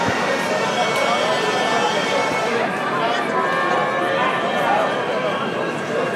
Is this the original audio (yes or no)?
yes